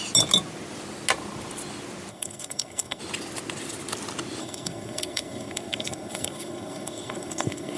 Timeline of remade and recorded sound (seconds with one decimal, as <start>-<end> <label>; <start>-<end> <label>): 0.0-2.1 recorded; 2.1-3.0 remade; 3.0-4.4 recorded; 4.4-7.8 remade